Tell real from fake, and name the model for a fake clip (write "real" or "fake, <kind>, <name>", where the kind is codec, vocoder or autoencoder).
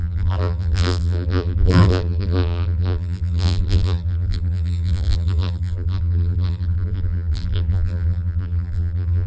fake, vocoder, BigVGAN v2